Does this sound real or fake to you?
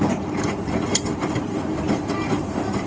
fake